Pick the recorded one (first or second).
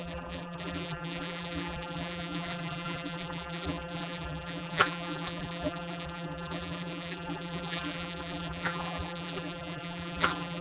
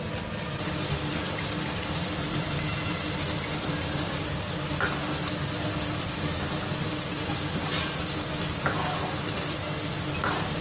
second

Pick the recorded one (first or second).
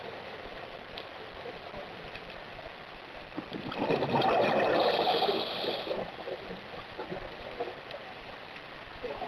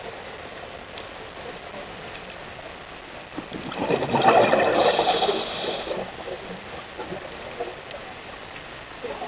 second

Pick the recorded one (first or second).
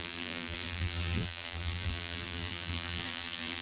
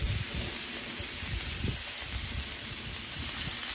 second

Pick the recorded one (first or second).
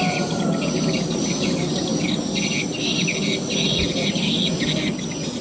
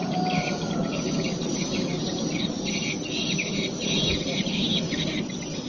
first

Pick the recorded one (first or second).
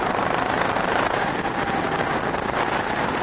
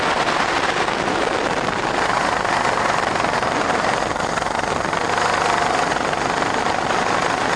second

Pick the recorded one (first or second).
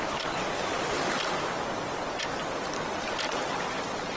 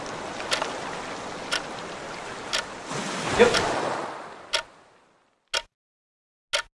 second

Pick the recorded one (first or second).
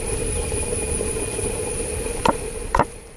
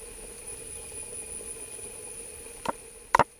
second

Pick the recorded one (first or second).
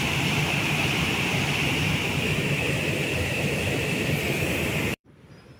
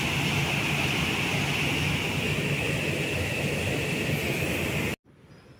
second